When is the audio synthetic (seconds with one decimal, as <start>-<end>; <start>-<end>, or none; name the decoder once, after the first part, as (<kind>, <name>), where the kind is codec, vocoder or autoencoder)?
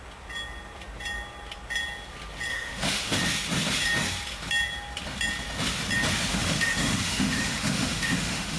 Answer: 2.5-3.2 (autoencoder, DAC-VAE); 6.3-8.6